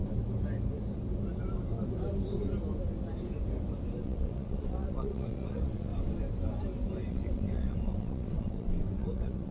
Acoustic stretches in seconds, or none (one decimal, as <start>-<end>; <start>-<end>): 0.0-4.0; 5.9-7.1